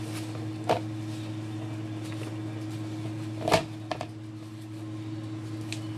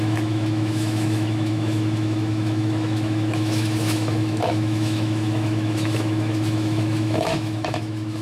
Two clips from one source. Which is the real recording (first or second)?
first